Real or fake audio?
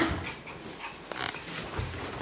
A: real